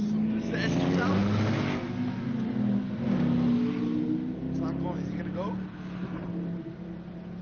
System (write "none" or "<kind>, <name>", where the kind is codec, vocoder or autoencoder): none